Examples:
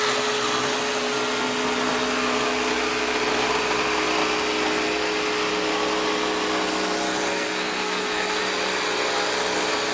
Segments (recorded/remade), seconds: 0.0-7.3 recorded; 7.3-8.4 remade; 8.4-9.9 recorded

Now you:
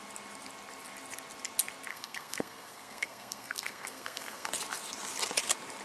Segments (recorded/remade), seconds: 0.0-1.9 recorded; 1.9-4.5 remade; 4.5-5.8 recorded

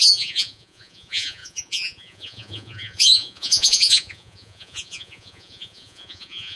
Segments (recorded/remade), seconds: 0.0-6.6 remade

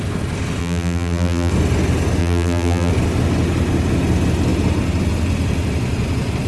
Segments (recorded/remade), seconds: 0.0-0.6 recorded; 0.6-1.5 remade; 1.5-2.2 recorded; 2.2-2.9 remade; 2.9-6.5 recorded